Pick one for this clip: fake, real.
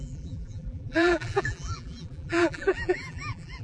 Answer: fake